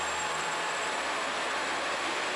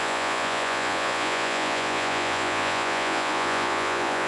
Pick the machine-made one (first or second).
second